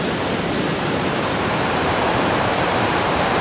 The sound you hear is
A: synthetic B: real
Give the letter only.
A